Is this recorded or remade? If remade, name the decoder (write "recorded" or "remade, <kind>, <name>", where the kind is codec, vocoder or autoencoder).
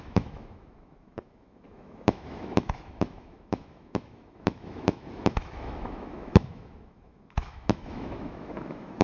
remade, autoencoder, DAC-VAE